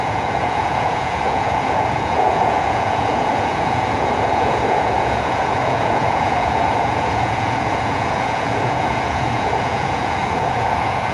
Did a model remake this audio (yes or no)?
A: yes